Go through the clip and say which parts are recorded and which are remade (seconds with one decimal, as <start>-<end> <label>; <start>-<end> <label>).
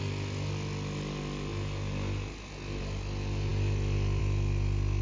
0.0-5.0 recorded